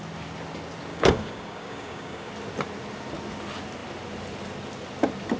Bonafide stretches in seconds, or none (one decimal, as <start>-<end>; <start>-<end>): 0.0-0.9; 2.3-5.4